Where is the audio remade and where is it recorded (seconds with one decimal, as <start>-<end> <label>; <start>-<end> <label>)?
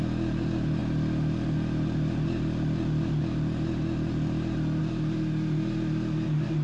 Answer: 0.0-6.6 recorded